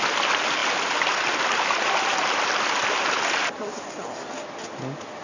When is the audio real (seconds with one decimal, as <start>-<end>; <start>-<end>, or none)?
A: 0.0-5.2